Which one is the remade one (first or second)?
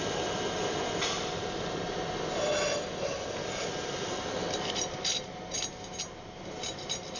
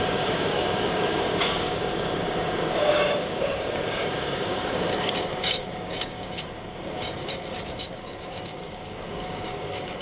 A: second